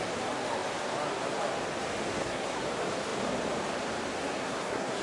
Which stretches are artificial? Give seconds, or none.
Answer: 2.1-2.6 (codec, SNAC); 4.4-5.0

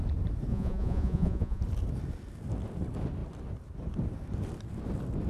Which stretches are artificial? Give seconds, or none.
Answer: 0.5-1.6 (vocoder, Vocos)